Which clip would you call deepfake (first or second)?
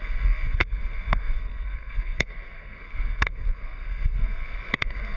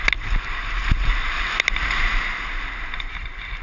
first